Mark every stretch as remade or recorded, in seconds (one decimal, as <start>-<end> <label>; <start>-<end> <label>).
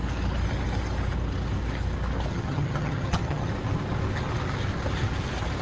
0.0-2.3 recorded; 2.3-3.5 remade; 3.5-5.6 recorded